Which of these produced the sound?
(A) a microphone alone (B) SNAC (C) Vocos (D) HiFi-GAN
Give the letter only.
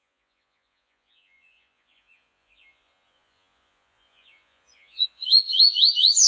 C